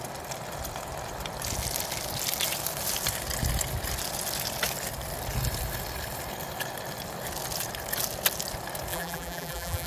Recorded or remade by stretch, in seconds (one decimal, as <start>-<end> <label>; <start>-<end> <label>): 0.0-8.9 recorded; 8.9-9.9 remade